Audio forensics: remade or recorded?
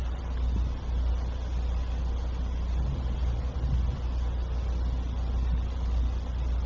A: recorded